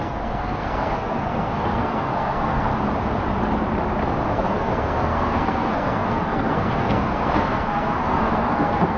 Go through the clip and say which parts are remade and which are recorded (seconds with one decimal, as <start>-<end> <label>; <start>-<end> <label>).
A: 0.0-2.7 remade; 2.7-4.3 recorded; 4.3-9.0 remade